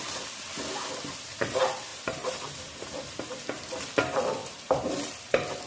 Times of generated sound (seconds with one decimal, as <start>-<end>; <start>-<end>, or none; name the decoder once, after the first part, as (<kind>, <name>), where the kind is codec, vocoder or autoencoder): 1.9-3.3 (vocoder, BigVGAN v2); 4.4-5.1